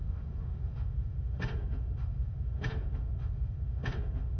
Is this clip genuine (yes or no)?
no